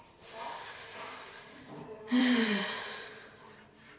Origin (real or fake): fake